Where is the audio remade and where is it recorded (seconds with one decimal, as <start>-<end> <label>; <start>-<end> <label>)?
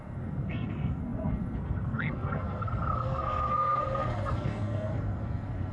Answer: 0.0-5.7 remade